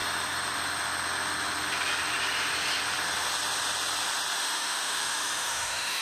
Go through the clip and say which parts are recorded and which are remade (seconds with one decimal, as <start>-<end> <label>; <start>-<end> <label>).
0.0-4.4 recorded; 4.4-6.0 remade